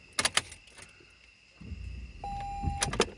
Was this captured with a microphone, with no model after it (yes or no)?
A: yes